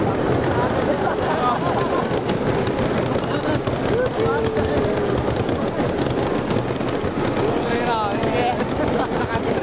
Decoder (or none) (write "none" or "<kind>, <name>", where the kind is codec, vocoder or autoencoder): none